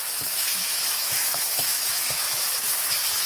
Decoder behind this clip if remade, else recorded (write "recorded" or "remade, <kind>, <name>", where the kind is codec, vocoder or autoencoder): remade, autoencoder, DAC-VAE